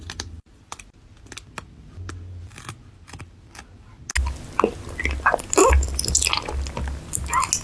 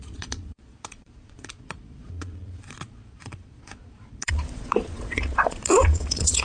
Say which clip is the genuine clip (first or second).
first